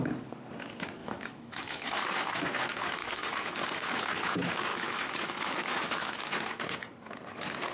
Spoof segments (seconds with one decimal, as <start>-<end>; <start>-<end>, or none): 1.0-2.0; 3.0-3.6; 4.7-6.2